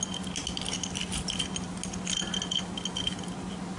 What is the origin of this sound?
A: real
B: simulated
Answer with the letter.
A